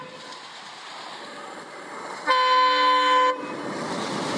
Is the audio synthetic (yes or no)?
no